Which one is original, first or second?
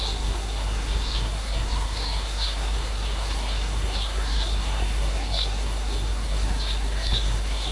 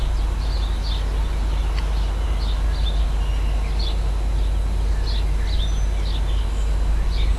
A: second